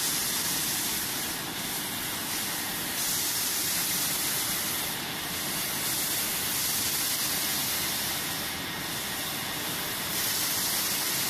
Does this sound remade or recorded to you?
recorded